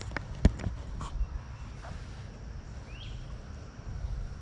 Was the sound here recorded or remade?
recorded